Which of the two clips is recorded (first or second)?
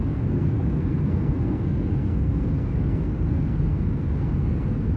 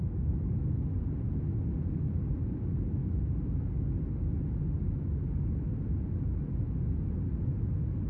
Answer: second